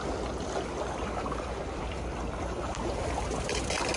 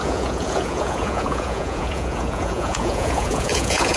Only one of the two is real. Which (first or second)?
first